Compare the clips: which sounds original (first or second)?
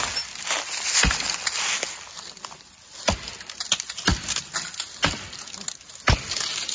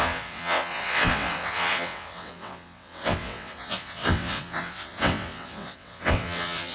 first